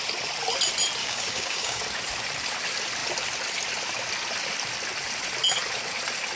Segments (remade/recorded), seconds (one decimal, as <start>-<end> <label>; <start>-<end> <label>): 0.0-1.0 recorded; 1.0-1.8 remade; 1.8-6.4 recorded